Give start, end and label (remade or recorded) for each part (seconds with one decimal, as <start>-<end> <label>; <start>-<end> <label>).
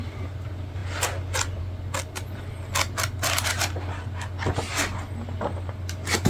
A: 0.0-6.3 recorded